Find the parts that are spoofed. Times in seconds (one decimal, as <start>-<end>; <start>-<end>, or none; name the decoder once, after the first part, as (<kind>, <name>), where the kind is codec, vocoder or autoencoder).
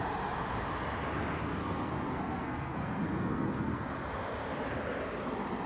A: 1.5-3.9 (codec, SNAC)